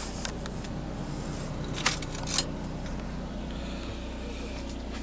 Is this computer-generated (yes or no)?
no